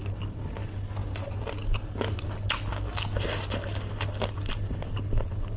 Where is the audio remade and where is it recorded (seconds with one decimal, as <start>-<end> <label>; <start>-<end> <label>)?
0.0-5.6 recorded